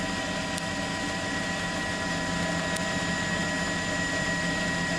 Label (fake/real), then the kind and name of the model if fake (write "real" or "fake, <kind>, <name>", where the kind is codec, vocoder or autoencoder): real